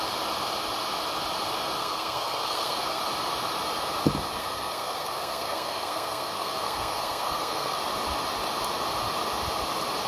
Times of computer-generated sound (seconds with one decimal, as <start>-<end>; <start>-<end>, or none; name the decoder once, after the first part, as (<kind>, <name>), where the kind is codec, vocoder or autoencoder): 1.8-3.0 (codec, SNAC); 4.4-7.8